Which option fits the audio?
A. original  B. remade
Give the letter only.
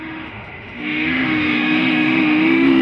B